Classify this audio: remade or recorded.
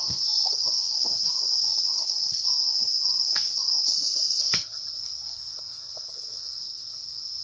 remade